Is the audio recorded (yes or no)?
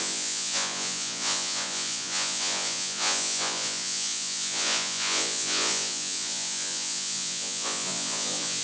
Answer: no